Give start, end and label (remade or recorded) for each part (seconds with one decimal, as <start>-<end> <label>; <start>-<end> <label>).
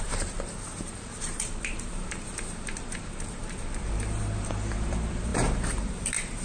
0.0-6.4 remade